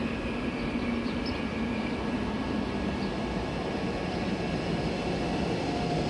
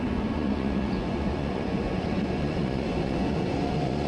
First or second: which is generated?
second